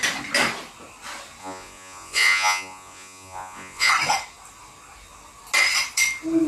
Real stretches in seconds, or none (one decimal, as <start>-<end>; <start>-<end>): 0.0-1.4; 3.9-6.5